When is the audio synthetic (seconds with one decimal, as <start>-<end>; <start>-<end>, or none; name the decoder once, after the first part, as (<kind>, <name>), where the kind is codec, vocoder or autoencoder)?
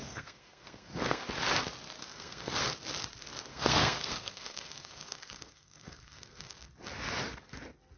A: 0.0-1.2 (codec, SNAC); 2.0-2.6; 3.5-6.7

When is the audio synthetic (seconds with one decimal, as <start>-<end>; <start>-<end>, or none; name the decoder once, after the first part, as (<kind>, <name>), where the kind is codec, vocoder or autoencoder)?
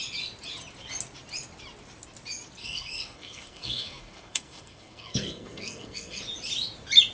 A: 2.6-6.2 (codec, SNAC)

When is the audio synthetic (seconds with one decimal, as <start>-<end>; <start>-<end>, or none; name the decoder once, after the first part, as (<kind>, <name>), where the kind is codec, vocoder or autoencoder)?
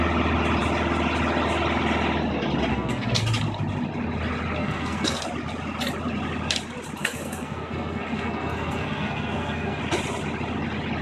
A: 2.7-3.2 (codec, SNAC); 4.6-5.2; 7.0-9.8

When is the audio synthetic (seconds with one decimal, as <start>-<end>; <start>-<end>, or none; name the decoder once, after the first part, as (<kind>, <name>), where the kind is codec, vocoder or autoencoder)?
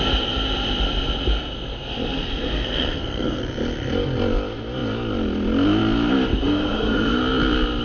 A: 1.3-3.4 (codec, SNAC); 6.3-7.2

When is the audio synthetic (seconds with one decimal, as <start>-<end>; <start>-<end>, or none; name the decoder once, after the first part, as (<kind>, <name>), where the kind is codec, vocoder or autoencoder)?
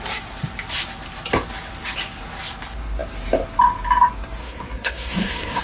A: 4.4-5.6 (codec, SNAC)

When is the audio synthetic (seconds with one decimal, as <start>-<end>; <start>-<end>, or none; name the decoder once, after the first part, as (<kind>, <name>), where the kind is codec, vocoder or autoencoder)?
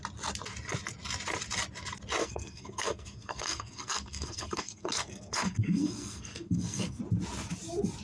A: 2.2-7.0 (codec, SNAC)